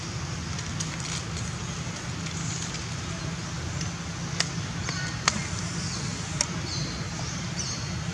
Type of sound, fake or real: real